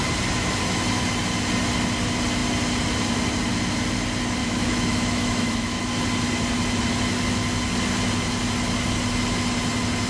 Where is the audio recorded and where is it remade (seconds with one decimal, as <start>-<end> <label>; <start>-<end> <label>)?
0.0-4.4 recorded; 4.4-5.8 remade; 5.8-10.1 recorded

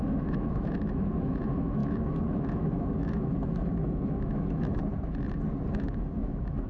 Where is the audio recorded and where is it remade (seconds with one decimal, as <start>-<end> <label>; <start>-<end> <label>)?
0.0-4.8 remade; 4.8-5.7 recorded; 5.7-6.7 remade

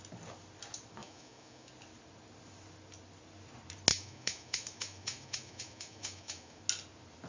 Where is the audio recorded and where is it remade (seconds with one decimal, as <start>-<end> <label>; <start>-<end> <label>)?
0.0-1.0 recorded; 1.0-1.7 remade; 1.7-3.9 recorded; 3.9-6.6 remade; 6.6-7.3 recorded